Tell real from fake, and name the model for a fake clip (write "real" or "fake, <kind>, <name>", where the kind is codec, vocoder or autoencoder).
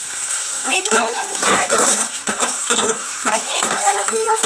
fake, codec, SNAC